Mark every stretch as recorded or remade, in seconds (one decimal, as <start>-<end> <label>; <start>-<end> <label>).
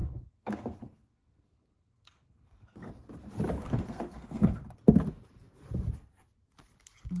0.0-2.9 remade; 2.9-3.6 recorded; 3.6-4.6 remade; 4.6-7.2 recorded